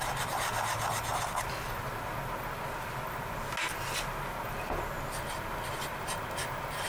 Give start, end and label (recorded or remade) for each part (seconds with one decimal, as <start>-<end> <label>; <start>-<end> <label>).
0.0-1.1 remade; 1.1-5.2 recorded; 5.2-6.9 remade

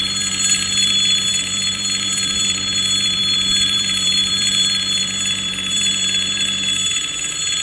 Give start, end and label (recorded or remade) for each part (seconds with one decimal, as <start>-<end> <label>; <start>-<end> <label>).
0.0-7.6 remade

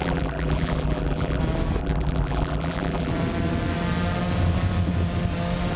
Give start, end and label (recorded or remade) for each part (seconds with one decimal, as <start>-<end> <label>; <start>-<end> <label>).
0.0-1.4 remade; 1.4-1.8 recorded; 1.8-3.1 remade; 3.1-5.8 recorded

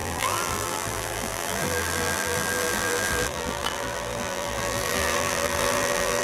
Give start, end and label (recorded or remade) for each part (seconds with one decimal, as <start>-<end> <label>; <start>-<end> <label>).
0.0-6.2 remade

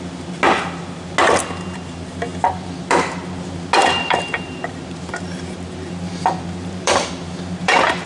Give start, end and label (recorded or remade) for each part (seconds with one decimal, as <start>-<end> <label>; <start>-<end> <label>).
0.0-3.8 recorded; 3.8-7.1 remade; 7.1-7.6 recorded; 7.6-8.1 remade

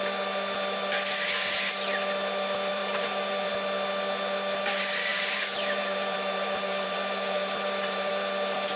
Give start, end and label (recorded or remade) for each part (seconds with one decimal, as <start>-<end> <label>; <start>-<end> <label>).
0.0-2.7 recorded; 2.7-3.5 remade; 3.5-5.1 recorded; 5.1-8.1 remade; 8.1-8.8 recorded

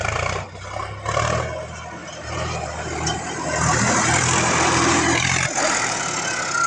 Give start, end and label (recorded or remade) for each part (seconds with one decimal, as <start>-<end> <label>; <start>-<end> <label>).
0.0-2.0 recorded; 2.0-6.0 remade; 6.0-6.7 recorded

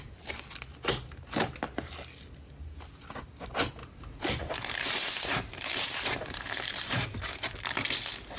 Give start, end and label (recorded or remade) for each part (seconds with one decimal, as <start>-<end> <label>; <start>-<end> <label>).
0.0-3.8 recorded; 3.8-7.3 remade; 7.3-8.4 recorded